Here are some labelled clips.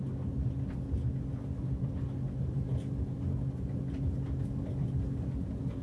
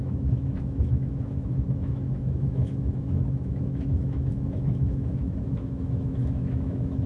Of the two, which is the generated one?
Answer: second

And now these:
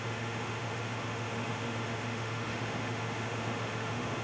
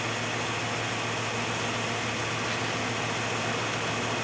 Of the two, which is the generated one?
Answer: first